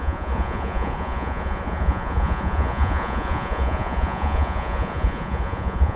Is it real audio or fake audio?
fake